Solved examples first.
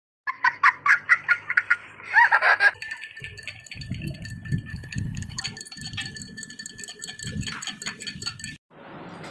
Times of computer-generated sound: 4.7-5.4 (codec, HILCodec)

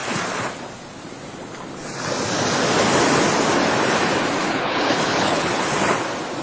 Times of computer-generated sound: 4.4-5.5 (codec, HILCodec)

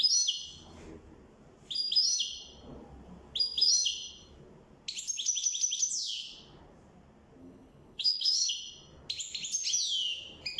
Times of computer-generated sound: 7.4-8.5 (codec, HILCodec)

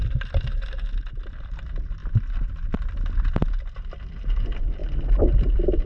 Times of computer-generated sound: none

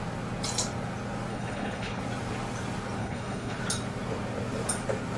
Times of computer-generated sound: 1.3-2.0 (codec, HILCodec); 3.0-3.6

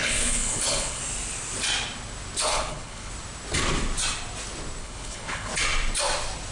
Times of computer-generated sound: 0.0-1.0 (codec, HILCodec); 2.5-3.1; 4.8-5.5